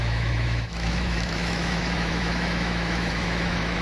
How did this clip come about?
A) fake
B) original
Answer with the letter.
A